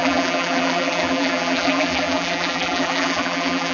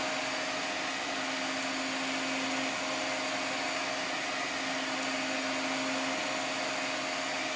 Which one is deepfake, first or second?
first